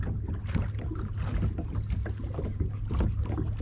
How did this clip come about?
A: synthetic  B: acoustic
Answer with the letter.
B